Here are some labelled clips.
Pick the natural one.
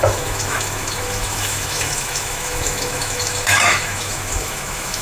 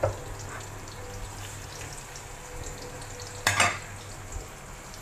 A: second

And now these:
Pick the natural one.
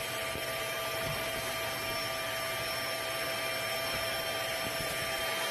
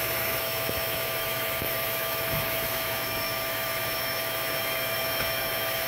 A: first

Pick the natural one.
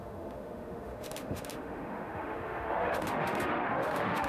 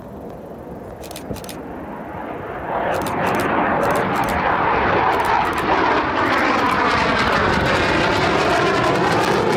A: second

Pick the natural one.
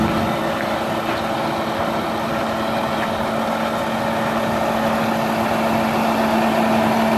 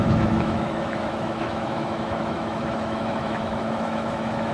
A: first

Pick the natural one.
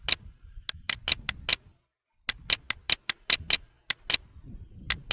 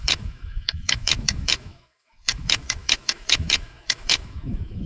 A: first